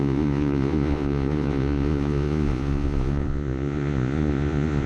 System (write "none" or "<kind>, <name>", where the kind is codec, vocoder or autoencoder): vocoder, Vocos